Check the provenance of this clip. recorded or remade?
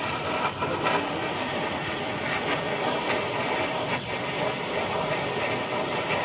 recorded